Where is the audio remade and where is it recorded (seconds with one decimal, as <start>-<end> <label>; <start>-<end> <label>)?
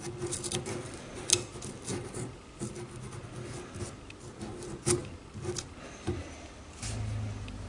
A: 0.0-7.7 recorded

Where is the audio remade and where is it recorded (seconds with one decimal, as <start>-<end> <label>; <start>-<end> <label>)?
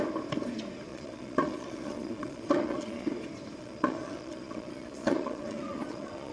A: 0.0-0.9 recorded; 0.9-3.1 remade; 3.1-3.6 recorded; 3.6-6.3 remade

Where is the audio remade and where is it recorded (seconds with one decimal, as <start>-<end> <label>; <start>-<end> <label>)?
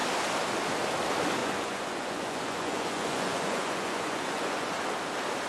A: 0.0-1.4 recorded; 1.4-4.7 remade; 4.7-5.5 recorded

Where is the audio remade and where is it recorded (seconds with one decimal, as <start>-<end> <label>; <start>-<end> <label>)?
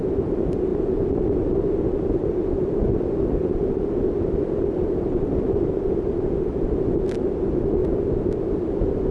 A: 0.0-0.7 remade; 0.7-2.0 recorded; 2.0-7.8 remade; 7.8-8.4 recorded; 8.4-9.1 remade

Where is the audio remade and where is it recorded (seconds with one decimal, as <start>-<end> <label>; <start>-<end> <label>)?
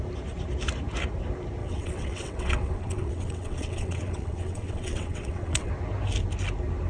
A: 0.0-1.6 recorded; 1.6-5.7 remade; 5.7-6.9 recorded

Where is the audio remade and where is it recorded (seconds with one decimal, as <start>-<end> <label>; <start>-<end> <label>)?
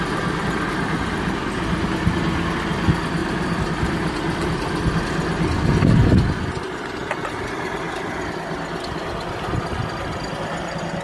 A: 0.0-11.0 recorded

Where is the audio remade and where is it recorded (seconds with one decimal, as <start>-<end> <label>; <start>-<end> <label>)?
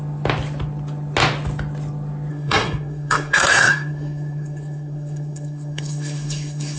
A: 0.0-2.3 recorded; 2.3-6.8 remade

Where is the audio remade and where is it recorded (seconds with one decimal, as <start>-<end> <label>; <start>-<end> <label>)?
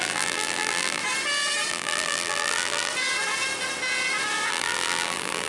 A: 0.0-1.0 remade; 1.0-1.7 recorded; 1.7-2.9 remade; 2.9-4.5 recorded; 4.5-5.5 remade